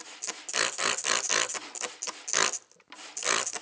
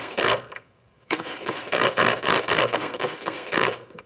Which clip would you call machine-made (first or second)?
second